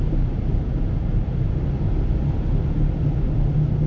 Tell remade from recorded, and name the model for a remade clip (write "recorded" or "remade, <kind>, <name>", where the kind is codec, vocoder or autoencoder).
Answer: recorded